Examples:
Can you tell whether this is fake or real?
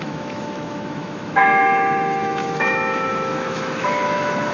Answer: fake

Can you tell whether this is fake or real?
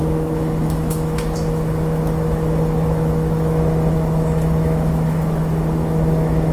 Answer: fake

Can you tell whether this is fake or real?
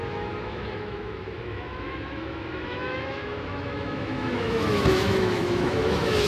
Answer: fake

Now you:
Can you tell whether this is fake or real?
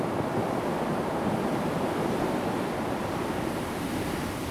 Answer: real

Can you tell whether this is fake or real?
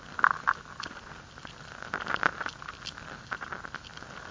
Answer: real